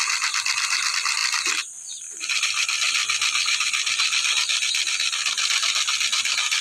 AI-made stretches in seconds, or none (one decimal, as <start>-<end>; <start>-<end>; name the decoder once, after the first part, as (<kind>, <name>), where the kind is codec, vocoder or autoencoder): 0.0-3.0 (vocoder, BigVGAN v2)